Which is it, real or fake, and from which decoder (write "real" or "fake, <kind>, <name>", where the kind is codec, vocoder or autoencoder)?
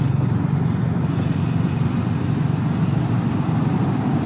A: real